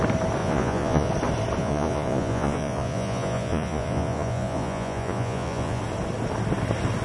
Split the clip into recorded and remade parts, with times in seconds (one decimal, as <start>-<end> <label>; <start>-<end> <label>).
0.0-0.4 recorded; 0.4-1.1 remade; 1.1-1.6 recorded; 1.6-5.8 remade; 5.8-7.0 recorded